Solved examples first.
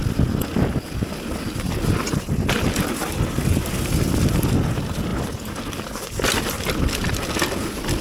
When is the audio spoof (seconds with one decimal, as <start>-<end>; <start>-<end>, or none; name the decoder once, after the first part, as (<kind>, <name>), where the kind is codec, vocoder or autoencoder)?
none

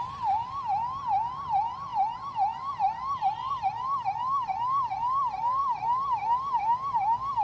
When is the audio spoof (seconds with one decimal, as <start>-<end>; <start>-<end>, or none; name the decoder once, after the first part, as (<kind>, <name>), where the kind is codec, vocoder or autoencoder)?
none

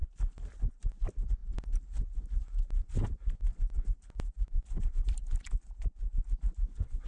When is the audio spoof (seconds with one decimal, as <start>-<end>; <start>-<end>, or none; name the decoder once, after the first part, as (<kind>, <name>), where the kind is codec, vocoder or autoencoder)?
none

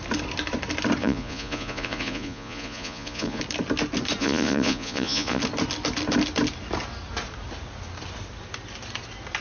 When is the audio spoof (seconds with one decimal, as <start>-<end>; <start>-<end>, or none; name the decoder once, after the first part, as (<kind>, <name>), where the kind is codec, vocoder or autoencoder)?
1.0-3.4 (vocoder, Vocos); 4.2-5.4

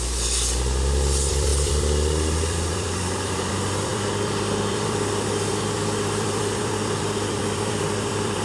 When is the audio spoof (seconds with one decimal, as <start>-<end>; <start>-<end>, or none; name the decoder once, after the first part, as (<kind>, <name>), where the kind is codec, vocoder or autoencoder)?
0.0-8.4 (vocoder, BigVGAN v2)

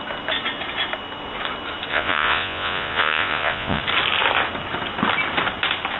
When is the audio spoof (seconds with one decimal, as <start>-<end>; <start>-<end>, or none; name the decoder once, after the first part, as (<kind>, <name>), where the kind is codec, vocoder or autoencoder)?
1.9-3.8 (vocoder, Vocos)